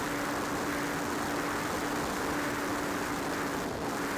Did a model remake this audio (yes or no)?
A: no